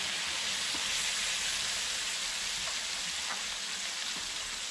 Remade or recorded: recorded